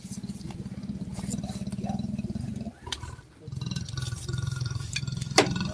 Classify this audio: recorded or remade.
remade